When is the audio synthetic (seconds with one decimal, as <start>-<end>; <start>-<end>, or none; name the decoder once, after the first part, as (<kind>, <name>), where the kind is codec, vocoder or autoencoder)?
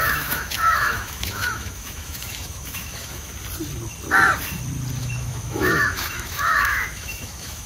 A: 0.0-3.3 (autoencoder, DAC-VAE); 5.0-7.7